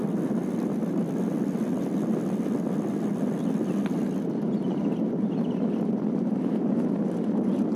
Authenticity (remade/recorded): recorded